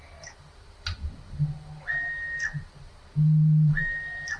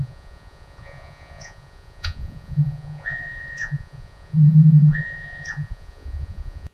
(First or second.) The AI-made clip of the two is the second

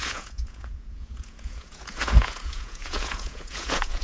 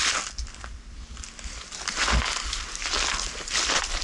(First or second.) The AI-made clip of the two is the first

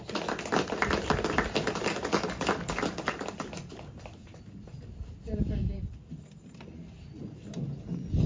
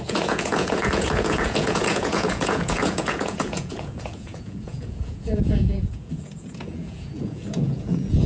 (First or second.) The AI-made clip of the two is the second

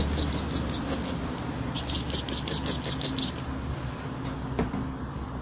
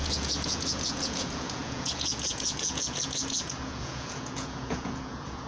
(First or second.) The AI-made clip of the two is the second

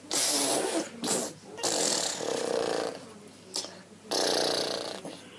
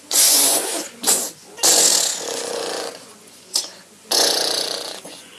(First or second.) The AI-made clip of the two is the second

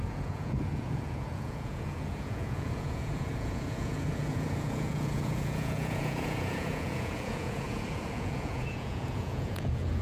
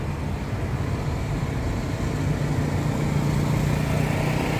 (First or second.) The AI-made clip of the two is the first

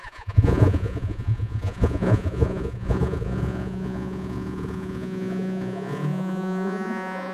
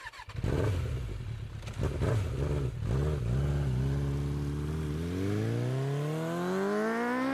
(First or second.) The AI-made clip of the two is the first